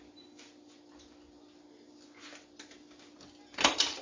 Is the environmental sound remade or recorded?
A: recorded